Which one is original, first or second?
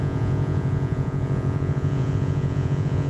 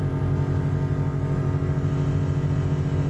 second